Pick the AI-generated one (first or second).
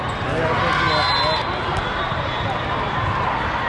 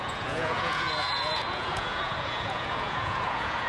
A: second